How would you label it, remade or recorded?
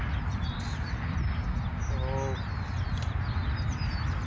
recorded